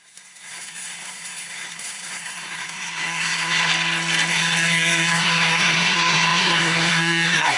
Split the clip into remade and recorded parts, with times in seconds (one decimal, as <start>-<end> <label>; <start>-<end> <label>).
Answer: 0.0-3.7 remade; 3.7-4.3 recorded; 4.3-7.6 remade